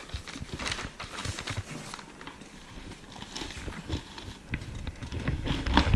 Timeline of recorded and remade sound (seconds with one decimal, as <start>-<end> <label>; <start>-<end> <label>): 0.0-6.0 recorded